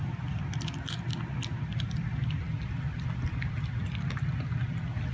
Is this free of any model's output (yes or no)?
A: yes